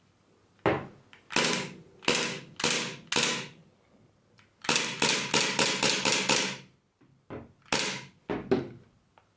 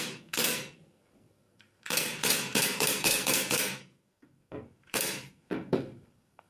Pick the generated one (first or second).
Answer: second